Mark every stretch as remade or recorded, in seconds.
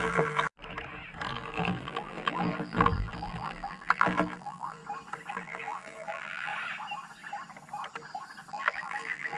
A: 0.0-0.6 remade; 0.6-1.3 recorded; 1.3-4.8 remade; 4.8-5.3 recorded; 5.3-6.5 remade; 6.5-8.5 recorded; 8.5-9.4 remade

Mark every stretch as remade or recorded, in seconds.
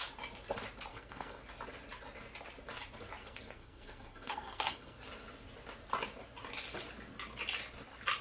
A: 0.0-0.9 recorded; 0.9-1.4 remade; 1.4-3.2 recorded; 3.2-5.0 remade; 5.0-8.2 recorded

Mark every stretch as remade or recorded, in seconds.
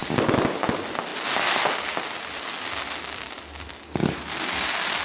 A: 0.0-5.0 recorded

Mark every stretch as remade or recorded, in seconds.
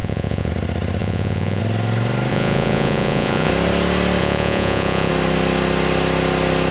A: 0.0-0.5 remade; 0.5-1.0 recorded; 1.0-1.6 remade; 1.6-2.3 recorded; 2.3-3.5 remade; 3.5-4.2 recorded; 4.2-5.1 remade; 5.1-6.7 recorded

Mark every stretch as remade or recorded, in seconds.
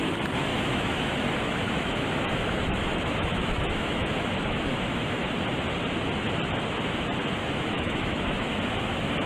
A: 0.0-0.5 recorded; 0.5-5.3 remade; 5.3-7.4 recorded; 7.4-8.5 remade; 8.5-9.3 recorded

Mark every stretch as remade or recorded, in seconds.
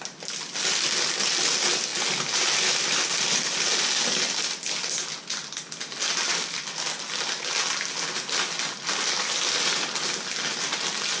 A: 0.0-11.2 recorded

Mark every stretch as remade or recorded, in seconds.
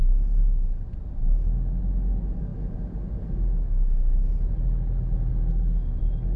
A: 0.0-5.3 recorded; 5.3-6.0 remade; 6.0-6.4 recorded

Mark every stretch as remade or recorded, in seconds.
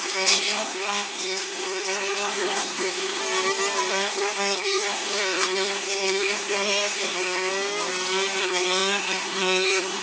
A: 0.0-3.2 remade; 3.2-3.9 recorded; 3.9-7.5 remade; 7.5-8.4 recorded; 8.4-10.0 remade